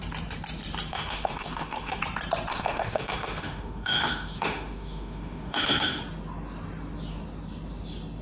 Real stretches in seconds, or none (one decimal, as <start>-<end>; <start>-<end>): 0.0-0.9; 2.0-2.5; 6.0-8.2